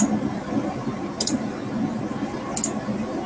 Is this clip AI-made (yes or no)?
no